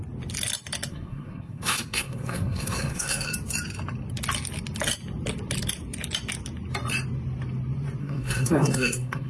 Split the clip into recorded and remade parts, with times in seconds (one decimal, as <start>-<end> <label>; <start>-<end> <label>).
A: 0.0-0.9 recorded; 0.9-3.3 remade; 3.3-8.0 recorded; 8.0-9.3 remade